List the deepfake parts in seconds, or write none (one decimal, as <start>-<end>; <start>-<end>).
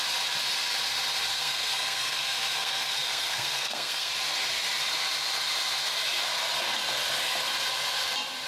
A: 1.3-4.1